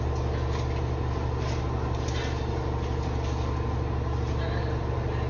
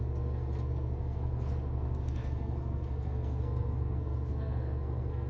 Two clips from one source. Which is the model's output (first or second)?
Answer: second